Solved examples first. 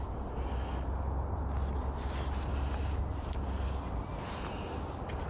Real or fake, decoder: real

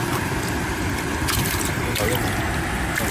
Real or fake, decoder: real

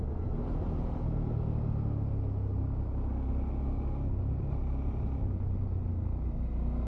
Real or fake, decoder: real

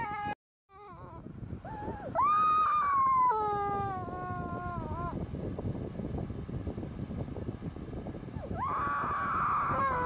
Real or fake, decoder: real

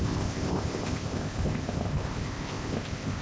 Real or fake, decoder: fake, codec, ZipCodec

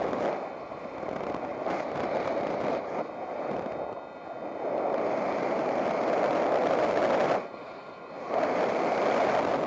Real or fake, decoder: real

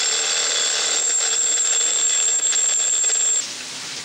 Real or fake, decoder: fake, vocoder, BigVGAN v2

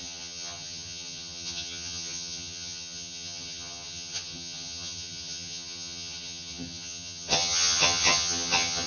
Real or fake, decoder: fake, vocoder, HiFi-GAN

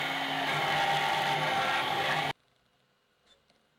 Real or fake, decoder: real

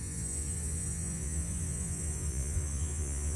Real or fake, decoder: fake, vocoder, Vocos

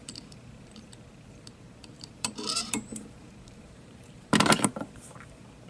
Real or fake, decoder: fake, vocoder, BigVGAN v2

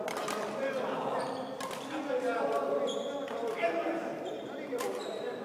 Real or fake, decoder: real